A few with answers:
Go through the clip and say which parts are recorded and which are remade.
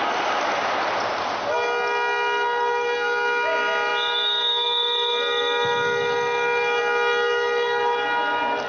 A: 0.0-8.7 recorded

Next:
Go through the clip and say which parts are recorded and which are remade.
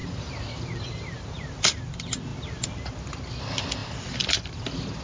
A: 0.0-5.0 recorded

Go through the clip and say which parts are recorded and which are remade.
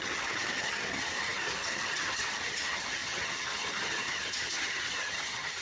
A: 0.0-5.6 remade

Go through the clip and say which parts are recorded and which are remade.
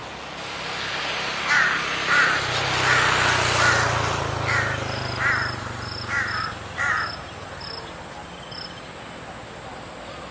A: 0.0-10.3 recorded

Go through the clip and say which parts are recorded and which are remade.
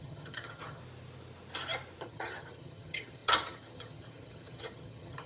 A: 0.0-0.8 remade; 0.8-2.0 recorded; 2.0-5.3 remade